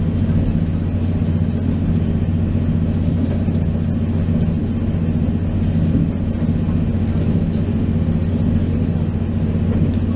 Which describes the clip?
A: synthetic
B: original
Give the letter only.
B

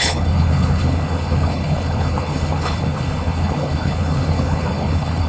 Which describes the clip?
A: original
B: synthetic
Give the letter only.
B